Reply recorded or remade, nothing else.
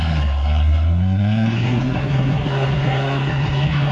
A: remade